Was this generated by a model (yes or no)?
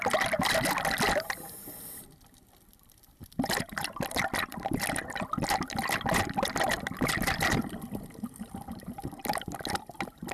no